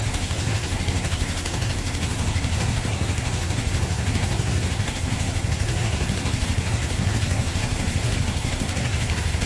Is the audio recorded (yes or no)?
no